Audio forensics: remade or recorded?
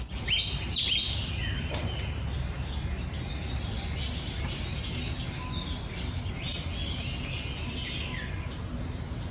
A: recorded